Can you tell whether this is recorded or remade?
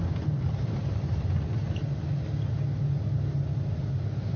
recorded